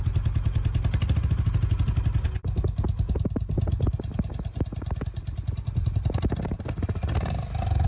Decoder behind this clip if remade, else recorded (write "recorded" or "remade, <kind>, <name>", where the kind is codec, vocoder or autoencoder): recorded